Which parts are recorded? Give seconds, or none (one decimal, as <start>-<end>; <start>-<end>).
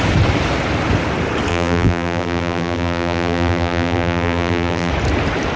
0.0-1.5; 4.9-5.6